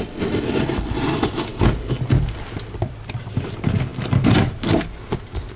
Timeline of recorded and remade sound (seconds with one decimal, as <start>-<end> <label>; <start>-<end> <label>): 0.0-5.6 recorded

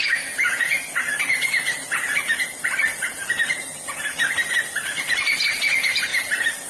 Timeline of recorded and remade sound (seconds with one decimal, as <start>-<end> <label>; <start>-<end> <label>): 0.0-6.7 recorded

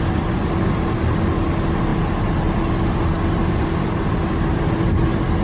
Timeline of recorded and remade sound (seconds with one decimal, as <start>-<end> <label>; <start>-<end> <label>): 0.0-5.4 recorded

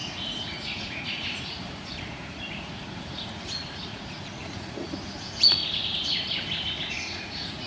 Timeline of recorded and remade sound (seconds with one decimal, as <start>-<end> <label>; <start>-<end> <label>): 0.0-5.6 remade; 5.6-6.9 recorded; 6.9-7.7 remade

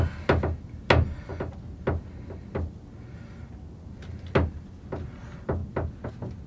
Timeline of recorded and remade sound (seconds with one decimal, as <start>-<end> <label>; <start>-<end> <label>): 0.0-6.5 recorded

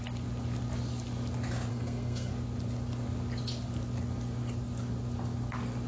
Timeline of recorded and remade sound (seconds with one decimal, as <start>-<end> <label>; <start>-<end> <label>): 0.0-1.7 recorded; 1.7-2.3 remade; 2.3-5.9 recorded

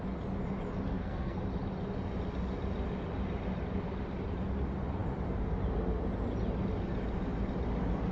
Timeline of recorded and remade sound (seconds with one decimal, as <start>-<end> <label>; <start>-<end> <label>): 0.0-0.9 recorded; 0.9-1.4 remade; 1.4-8.1 recorded

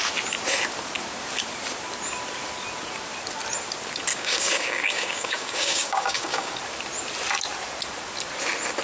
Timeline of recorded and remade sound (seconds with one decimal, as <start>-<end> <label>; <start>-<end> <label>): 0.0-4.1 recorded; 4.1-6.5 remade; 6.5-8.8 recorded